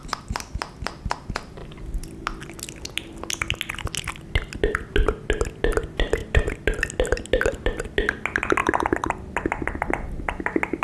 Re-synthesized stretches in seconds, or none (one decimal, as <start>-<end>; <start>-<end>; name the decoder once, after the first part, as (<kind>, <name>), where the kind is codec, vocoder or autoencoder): none